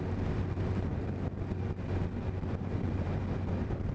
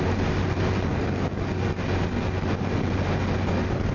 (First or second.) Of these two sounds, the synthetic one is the first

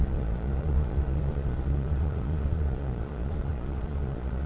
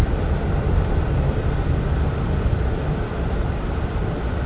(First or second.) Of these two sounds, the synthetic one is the first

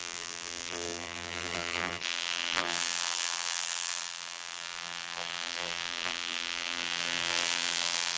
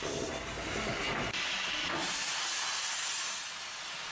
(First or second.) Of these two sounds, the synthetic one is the first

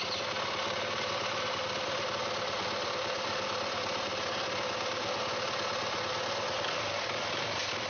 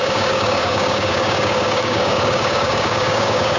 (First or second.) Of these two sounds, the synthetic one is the second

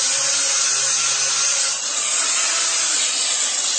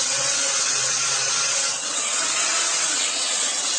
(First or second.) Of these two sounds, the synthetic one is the second